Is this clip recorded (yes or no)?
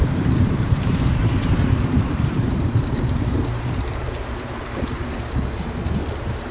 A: no